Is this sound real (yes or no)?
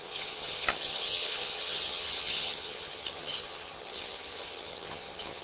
no